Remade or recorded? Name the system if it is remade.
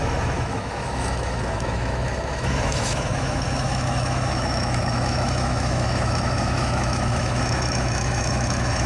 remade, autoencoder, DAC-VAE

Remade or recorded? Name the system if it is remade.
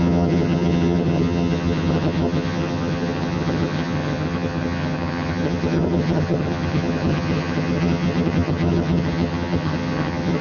remade, vocoder, HiFi-GAN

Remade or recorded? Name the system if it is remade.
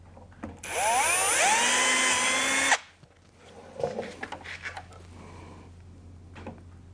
recorded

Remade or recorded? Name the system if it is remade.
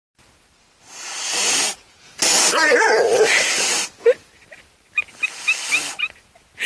recorded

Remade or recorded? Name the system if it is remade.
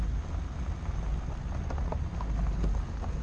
recorded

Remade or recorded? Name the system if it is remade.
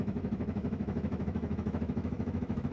remade, autoencoder, DAC-VAE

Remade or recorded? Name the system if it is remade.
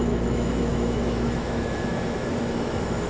remade, autoencoder, DAC-VAE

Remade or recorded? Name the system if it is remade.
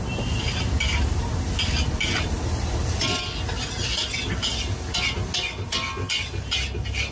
recorded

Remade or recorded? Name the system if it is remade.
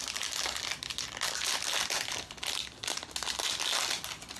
recorded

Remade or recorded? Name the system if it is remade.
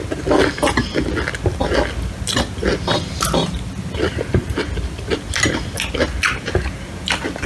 recorded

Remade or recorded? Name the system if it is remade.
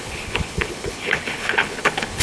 remade, codec, HILCodec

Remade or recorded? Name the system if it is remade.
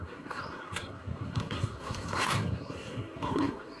remade, codec, SNAC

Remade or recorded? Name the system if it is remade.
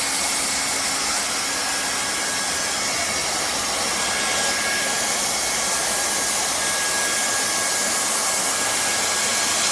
recorded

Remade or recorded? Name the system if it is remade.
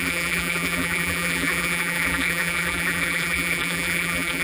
remade, vocoder, BigVGAN v2